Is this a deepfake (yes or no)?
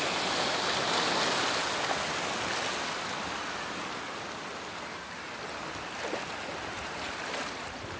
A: no